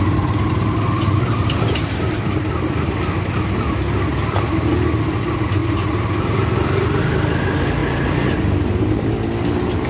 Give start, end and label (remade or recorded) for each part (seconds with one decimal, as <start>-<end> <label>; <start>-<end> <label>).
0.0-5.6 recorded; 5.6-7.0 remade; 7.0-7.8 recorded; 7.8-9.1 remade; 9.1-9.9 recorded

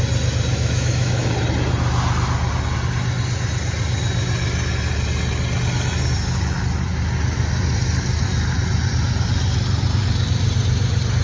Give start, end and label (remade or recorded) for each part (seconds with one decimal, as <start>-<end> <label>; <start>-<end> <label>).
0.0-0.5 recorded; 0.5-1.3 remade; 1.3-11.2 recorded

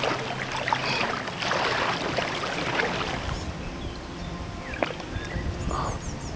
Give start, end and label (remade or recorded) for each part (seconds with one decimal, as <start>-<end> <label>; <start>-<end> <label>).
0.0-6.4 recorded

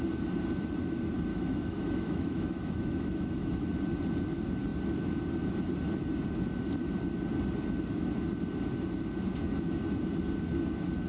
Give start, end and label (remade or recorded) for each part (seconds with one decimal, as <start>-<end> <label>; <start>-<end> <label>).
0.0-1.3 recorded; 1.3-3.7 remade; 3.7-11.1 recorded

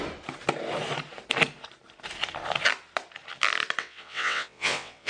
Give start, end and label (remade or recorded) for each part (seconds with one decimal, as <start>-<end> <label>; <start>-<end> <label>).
0.0-3.8 recorded; 3.8-5.1 remade

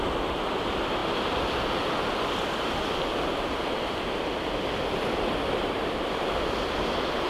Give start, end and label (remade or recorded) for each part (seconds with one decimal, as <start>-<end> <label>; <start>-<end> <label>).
0.0-7.3 recorded

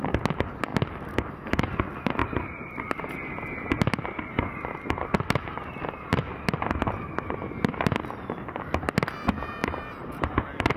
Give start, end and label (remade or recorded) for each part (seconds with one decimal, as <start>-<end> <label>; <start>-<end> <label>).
0.0-0.7 recorded; 0.7-1.3 remade; 1.3-2.2 recorded; 2.2-2.8 remade; 2.8-9.6 recorded; 9.6-10.2 remade; 10.2-10.8 recorded

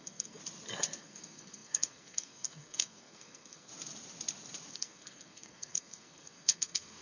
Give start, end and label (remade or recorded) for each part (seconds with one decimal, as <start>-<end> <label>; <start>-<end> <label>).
0.0-0.4 remade; 0.4-1.0 recorded; 1.0-3.7 remade; 3.7-4.7 recorded; 4.7-7.0 remade